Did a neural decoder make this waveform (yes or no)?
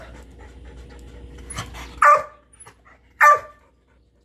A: no